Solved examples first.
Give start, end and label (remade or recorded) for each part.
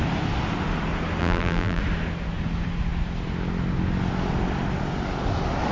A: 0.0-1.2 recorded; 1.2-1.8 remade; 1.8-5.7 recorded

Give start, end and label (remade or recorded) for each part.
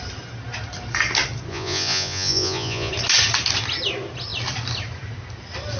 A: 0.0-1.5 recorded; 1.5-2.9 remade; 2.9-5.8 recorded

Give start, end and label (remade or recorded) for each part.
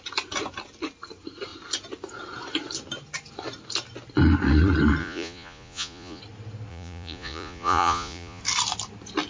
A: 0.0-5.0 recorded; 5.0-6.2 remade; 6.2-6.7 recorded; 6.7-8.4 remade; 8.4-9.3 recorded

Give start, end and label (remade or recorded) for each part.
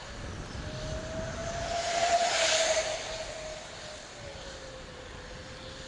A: 0.0-1.4 recorded; 1.4-2.8 remade; 2.8-4.3 recorded; 4.3-5.0 remade; 5.0-5.9 recorded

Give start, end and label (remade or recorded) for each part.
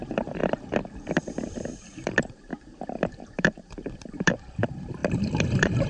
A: 0.0-0.4 remade; 0.4-1.2 recorded; 1.2-5.9 remade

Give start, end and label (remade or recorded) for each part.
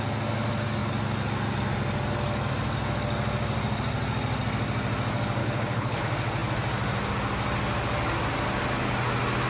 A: 0.0-5.4 recorded; 5.4-6.0 remade; 6.0-9.5 recorded